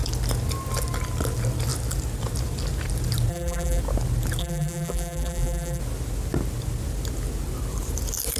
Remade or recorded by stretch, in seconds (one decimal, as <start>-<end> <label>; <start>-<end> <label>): 0.0-3.3 recorded; 3.3-3.8 remade; 3.8-4.4 recorded; 4.4-5.8 remade; 5.8-8.4 recorded